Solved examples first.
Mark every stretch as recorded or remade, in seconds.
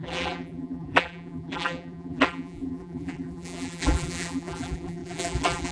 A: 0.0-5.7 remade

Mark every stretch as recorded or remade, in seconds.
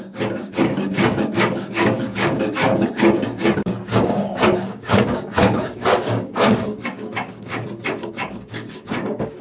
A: 0.0-7.5 remade; 7.5-8.1 recorded; 8.1-9.4 remade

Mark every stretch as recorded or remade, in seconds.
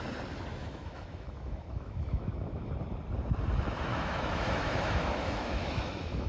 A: 0.0-0.6 recorded; 0.6-2.7 remade; 2.7-3.9 recorded; 3.9-6.3 remade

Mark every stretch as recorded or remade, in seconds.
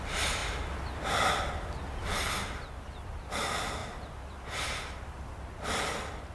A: 0.0-6.3 recorded